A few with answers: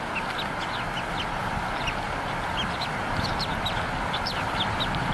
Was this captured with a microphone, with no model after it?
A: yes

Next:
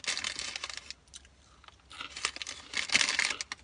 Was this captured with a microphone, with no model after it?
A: yes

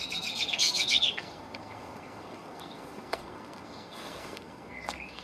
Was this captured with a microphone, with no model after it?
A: no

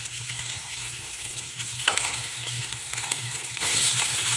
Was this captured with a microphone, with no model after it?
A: no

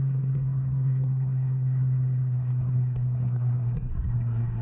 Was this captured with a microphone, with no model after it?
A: no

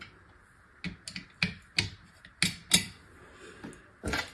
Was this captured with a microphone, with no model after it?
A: yes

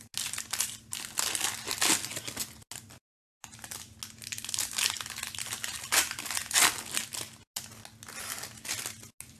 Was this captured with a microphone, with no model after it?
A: yes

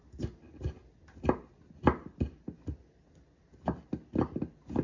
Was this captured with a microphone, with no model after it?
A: yes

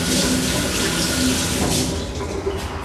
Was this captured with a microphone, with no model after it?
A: yes